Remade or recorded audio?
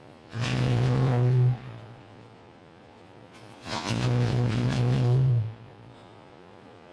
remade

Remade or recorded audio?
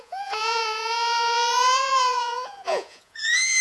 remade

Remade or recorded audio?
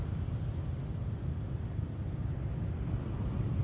recorded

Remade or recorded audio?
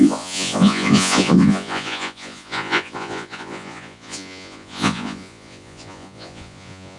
remade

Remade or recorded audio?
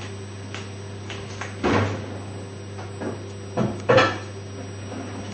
recorded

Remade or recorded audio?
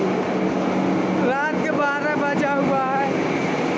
recorded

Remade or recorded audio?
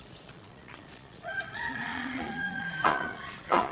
remade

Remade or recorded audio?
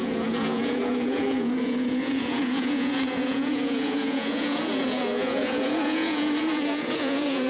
remade